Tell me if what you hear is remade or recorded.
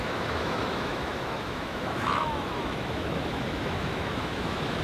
remade